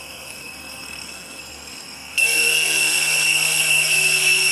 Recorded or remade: remade